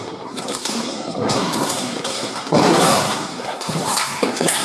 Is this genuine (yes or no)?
no